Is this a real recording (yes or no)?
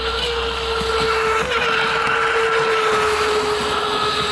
yes